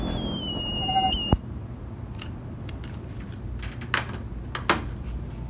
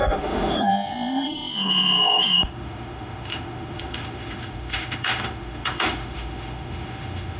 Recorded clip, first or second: first